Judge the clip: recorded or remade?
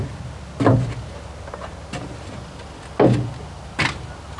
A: recorded